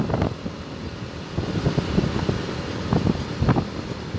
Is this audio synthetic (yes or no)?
no